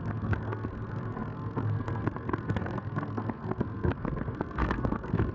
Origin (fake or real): fake